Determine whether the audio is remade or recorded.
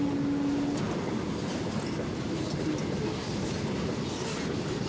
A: recorded